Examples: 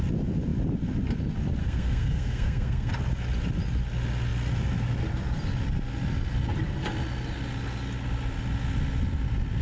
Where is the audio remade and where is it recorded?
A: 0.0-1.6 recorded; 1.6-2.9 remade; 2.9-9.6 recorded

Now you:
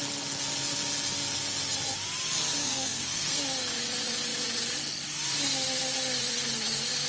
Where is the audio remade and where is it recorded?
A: 0.0-2.6 recorded; 2.6-3.4 remade; 3.4-7.1 recorded

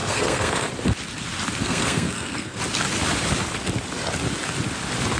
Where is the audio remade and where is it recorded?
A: 0.0-0.7 remade; 0.7-1.6 recorded; 1.6-2.6 remade; 2.6-5.2 recorded

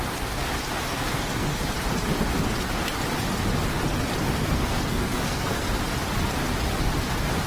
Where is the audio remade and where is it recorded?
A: 0.0-0.9 recorded; 0.9-1.6 remade; 1.6-4.4 recorded; 4.4-5.7 remade; 5.7-7.5 recorded

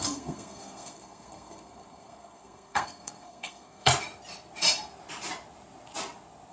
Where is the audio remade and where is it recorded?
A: 0.0-3.9 remade; 3.9-6.5 recorded